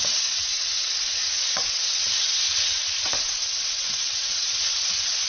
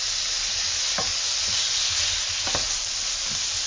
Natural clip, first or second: second